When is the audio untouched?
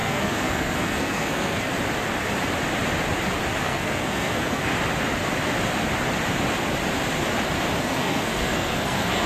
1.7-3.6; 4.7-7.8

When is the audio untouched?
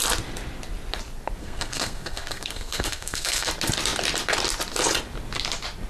0.0-1.4; 3.5-5.9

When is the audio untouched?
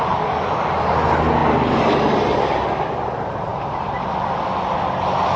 0.0-5.4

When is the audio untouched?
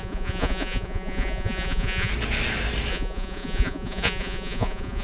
2.1-2.9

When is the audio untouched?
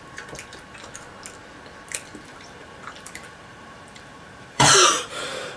0.0-2.3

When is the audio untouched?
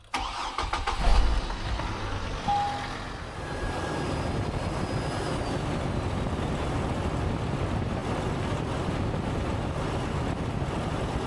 0.0-11.3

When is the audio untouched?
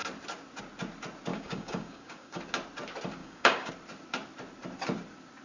0.0-1.3; 2.4-3.2; 3.7-5.4